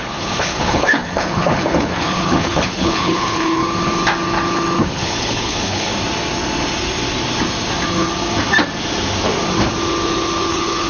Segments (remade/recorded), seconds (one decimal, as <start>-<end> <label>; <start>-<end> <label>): 0.0-3.6 remade; 3.6-4.8 recorded; 4.8-5.9 remade; 5.9-10.5 recorded; 10.5-10.9 remade